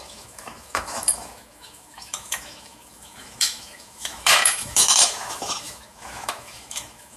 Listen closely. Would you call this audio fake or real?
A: fake